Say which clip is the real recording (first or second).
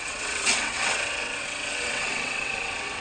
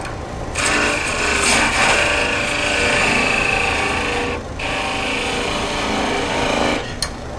second